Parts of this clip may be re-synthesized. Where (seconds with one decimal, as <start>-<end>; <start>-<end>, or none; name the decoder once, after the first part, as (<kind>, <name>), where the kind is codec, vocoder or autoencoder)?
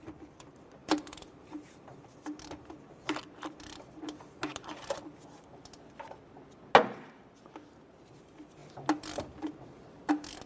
0.8-1.9 (vocoder, BigVGAN v2)